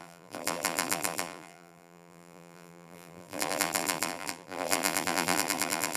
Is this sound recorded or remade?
remade